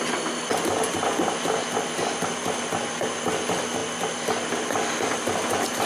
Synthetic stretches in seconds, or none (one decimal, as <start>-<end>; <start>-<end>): none